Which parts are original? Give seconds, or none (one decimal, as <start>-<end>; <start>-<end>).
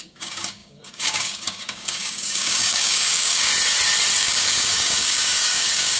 3.5-4.2